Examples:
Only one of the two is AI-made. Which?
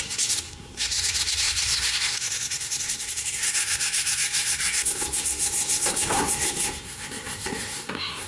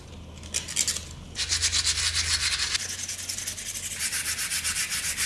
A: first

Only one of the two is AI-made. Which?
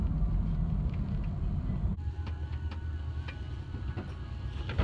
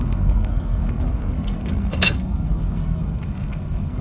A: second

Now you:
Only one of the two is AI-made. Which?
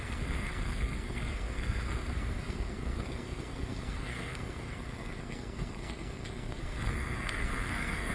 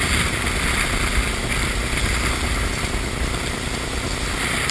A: first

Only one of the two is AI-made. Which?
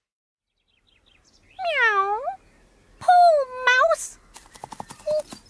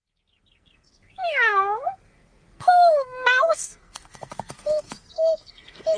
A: second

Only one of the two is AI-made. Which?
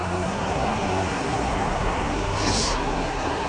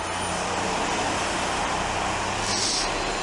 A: first